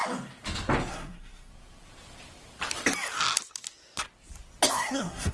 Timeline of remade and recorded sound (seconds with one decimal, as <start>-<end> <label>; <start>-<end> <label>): 0.0-0.9 recorded; 0.9-1.5 remade; 1.5-4.7 recorded; 4.7-5.3 remade

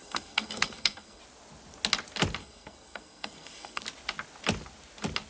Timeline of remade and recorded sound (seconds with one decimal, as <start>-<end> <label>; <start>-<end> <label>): 0.0-1.2 remade; 1.2-2.4 recorded; 2.4-3.8 remade; 3.8-5.3 recorded

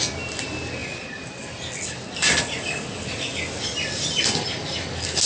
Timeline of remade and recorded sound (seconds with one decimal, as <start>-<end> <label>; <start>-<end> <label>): 0.0-5.3 recorded

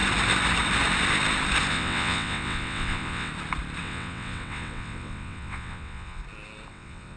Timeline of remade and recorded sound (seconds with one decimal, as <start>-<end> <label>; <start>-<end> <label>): 0.0-1.7 recorded; 1.7-3.3 remade; 3.3-3.8 recorded; 3.8-6.2 remade; 6.2-6.7 recorded; 6.7-7.2 remade

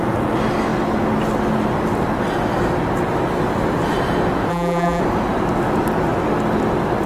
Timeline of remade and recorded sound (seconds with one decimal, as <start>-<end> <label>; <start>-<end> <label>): 0.0-4.5 recorded; 4.5-5.0 remade; 5.0-7.1 recorded